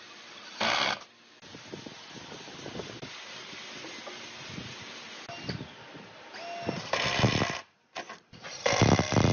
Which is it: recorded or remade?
recorded